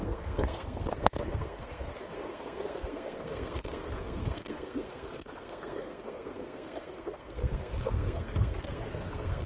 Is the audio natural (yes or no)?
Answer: no